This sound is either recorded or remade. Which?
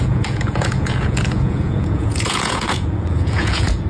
remade